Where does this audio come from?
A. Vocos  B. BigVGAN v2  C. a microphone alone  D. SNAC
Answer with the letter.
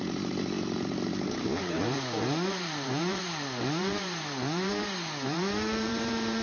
B